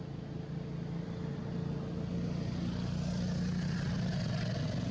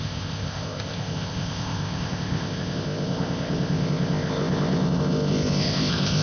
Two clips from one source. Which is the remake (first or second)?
second